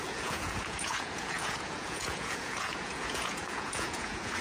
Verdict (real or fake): fake